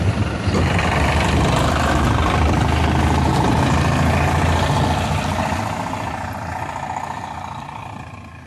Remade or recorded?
recorded